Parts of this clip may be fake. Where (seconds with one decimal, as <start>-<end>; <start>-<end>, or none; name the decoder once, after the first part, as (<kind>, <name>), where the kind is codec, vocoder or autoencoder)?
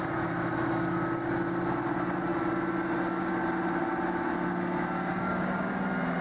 5.1-5.7 (codec, DAC)